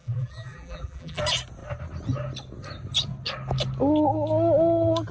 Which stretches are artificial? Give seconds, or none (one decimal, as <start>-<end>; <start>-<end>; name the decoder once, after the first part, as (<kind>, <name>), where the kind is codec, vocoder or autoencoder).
0.0-1.2 (vocoder, BigVGAN v2)